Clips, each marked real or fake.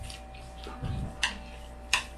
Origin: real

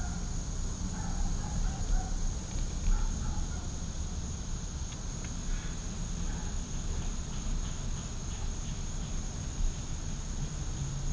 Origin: real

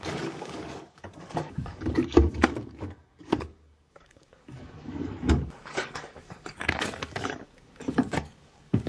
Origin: fake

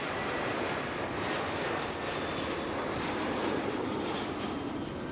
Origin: real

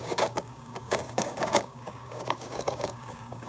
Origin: fake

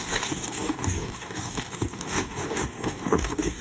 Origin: fake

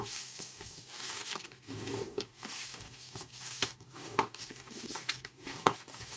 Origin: fake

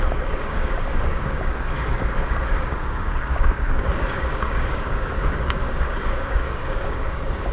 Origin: fake